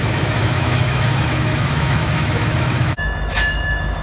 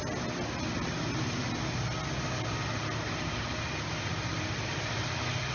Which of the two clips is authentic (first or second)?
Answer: second